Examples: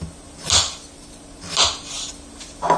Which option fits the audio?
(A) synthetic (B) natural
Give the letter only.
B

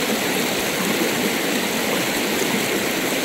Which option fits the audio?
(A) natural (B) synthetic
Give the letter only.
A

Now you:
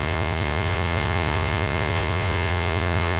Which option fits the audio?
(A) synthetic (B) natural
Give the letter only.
A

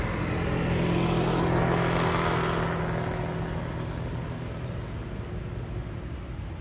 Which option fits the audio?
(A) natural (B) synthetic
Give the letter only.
A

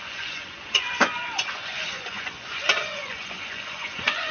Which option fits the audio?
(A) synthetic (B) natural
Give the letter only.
A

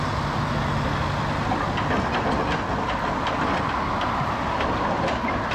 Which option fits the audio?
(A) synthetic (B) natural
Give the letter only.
B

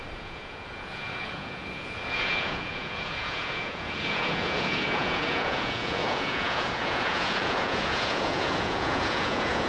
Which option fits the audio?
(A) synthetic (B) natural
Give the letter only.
A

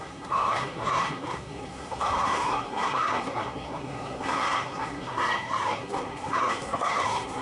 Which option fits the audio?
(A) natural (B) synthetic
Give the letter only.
B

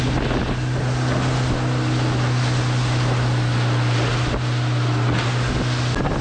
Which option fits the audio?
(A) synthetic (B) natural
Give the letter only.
B